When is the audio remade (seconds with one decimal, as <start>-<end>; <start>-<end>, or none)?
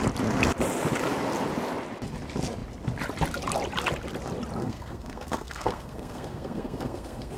4.6-7.4